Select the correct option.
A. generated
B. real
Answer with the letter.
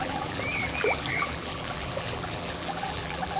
A